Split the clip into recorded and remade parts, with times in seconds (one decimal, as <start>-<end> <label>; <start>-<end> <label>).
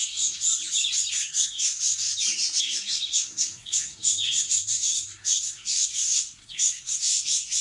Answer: 0.0-0.4 remade; 0.4-1.1 recorded; 1.1-2.1 remade; 2.1-2.6 recorded; 2.6-7.6 remade